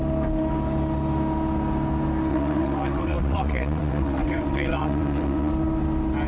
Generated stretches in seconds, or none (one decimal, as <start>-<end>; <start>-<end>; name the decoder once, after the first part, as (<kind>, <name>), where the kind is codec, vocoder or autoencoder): 2.3-5.5 (vocoder, WaveNeXt)